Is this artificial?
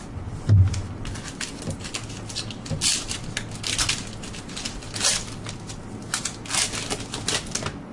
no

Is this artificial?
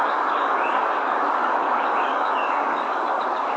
yes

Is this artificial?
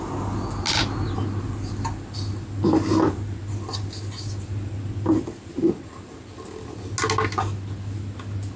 no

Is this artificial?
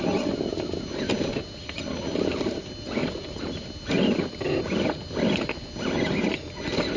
no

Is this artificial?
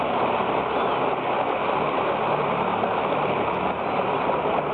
no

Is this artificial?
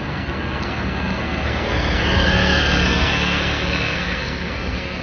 yes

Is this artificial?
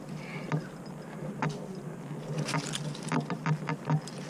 no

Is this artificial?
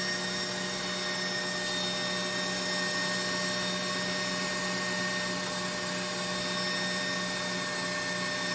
no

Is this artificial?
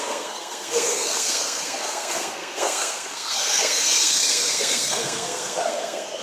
yes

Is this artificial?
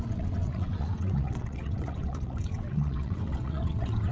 yes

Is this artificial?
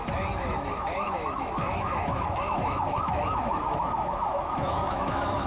yes